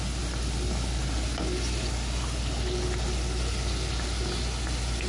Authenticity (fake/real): real